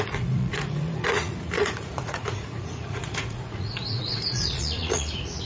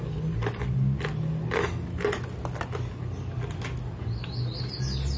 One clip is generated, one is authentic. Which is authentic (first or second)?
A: second